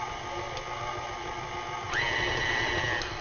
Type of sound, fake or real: real